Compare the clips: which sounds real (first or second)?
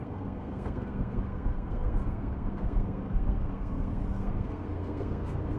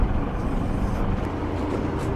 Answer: second